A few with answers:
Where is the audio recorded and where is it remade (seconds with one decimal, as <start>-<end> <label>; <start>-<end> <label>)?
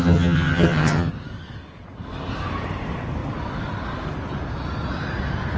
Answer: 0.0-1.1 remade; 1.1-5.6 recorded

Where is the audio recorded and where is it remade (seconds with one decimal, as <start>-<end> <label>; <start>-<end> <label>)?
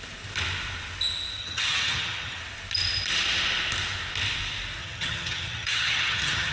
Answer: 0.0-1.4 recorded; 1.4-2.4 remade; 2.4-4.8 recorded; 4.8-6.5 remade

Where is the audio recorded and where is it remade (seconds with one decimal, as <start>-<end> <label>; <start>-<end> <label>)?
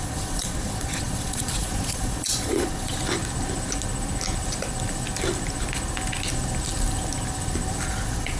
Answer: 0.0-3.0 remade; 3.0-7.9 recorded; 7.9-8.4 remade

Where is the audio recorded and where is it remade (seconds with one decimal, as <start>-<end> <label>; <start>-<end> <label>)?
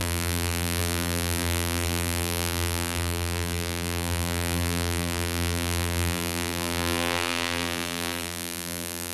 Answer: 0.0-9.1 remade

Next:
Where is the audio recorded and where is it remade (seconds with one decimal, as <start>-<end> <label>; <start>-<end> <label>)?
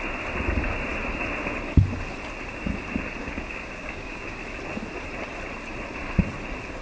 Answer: 0.0-3.2 recorded; 3.2-4.4 remade; 4.4-6.8 recorded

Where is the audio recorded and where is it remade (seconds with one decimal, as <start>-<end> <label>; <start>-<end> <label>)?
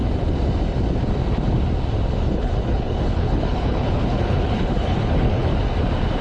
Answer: 0.0-2.2 recorded; 2.2-5.5 remade; 5.5-6.2 recorded